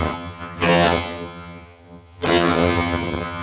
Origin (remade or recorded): remade